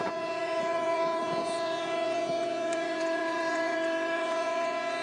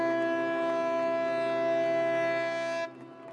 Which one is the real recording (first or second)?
second